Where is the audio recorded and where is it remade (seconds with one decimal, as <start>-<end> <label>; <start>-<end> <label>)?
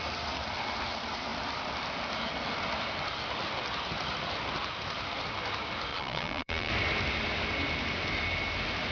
0.0-5.9 recorded; 5.9-6.7 remade; 6.7-8.9 recorded